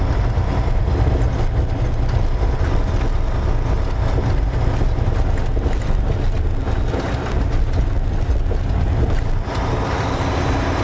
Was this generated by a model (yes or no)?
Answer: no